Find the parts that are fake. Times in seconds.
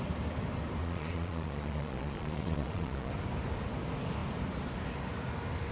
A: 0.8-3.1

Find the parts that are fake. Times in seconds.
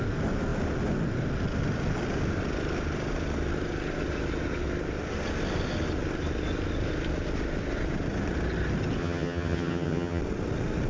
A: 9.0-10.2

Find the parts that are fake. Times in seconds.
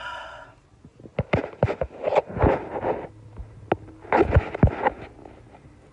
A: 1.1-2.2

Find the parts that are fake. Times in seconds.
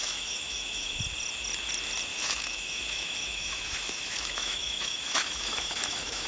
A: 0.0-1.0; 2.1-6.3